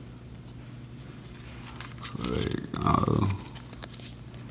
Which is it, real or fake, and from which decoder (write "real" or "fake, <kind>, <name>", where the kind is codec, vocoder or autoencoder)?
real